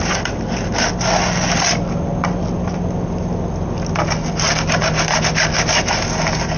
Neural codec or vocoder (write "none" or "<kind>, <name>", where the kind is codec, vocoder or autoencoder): none